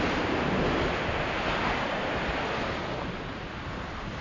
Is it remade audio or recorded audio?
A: recorded